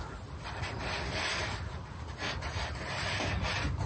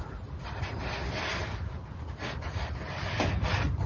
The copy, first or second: second